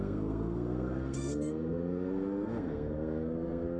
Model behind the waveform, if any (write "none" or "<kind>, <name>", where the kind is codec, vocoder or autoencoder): codec, SNAC